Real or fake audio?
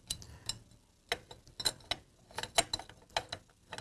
real